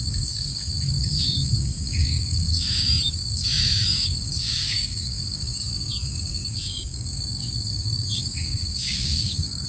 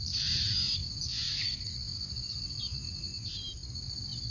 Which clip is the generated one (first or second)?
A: first